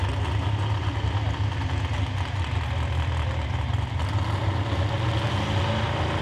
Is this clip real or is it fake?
real